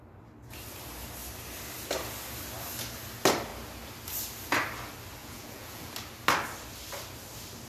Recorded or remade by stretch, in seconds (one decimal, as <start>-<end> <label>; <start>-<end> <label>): 0.0-5.2 recorded; 5.2-5.9 remade; 5.9-7.7 recorded